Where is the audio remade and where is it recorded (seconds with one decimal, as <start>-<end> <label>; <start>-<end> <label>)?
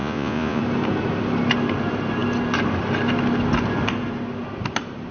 0.0-0.6 remade; 0.6-5.1 recorded